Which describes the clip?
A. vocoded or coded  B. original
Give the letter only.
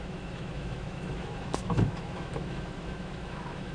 A